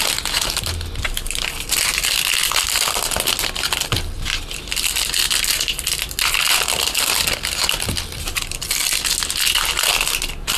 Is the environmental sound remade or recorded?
recorded